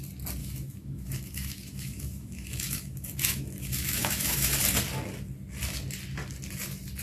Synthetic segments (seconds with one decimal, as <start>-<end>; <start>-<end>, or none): 0.4-4.5